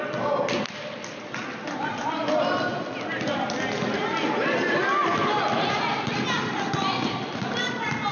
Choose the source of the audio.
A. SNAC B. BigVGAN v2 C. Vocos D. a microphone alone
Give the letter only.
D